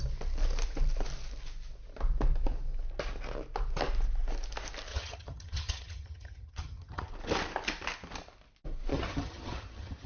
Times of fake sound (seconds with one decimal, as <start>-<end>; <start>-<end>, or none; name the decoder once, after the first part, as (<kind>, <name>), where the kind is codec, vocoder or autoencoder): 4.9-7.1 (vocoder, HiFi-GAN); 8.9-10.1